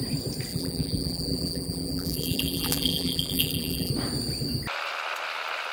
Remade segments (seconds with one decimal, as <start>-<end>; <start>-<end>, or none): 0.5-3.9